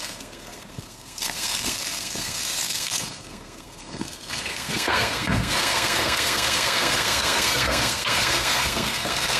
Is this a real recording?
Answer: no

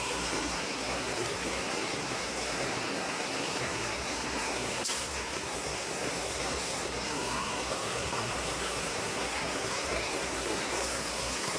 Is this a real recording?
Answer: no